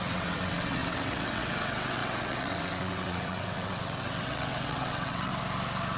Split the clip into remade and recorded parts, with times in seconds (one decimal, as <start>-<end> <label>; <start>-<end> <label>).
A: 0.0-5.3 remade; 5.3-6.0 recorded